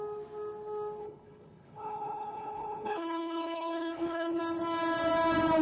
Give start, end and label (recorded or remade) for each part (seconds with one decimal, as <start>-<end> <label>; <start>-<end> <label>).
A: 0.0-1.0 recorded; 1.0-4.4 remade; 4.4-5.6 recorded